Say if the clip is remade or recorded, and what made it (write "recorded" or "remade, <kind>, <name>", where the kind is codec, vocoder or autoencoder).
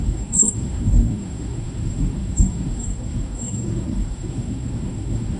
remade, codec, SNAC